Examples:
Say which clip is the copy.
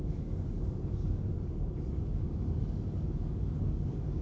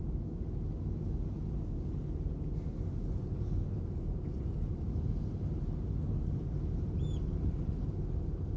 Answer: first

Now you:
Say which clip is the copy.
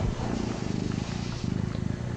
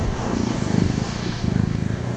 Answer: second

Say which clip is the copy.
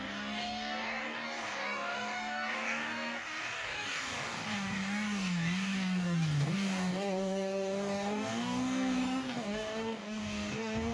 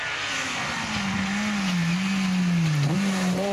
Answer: first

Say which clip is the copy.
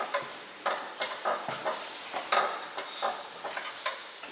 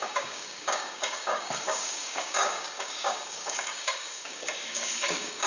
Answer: second